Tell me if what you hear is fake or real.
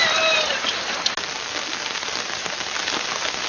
real